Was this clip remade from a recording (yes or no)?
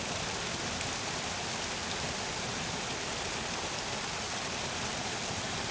no